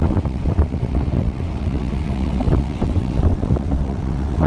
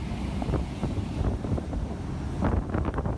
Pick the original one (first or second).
second